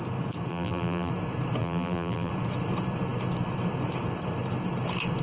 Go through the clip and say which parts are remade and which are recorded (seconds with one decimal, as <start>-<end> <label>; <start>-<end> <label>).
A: 0.0-0.5 recorded; 0.5-1.1 remade; 1.1-1.6 recorded; 1.6-2.3 remade; 2.3-5.2 recorded